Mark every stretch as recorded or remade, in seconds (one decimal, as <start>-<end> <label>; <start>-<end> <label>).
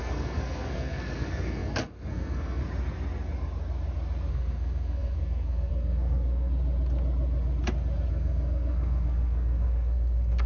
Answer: 0.0-2.6 remade; 2.6-4.3 recorded; 4.3-6.5 remade; 6.5-8.1 recorded; 8.1-10.5 remade